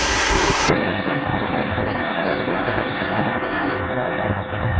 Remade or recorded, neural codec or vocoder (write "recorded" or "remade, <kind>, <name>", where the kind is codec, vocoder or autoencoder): remade, codec, SNAC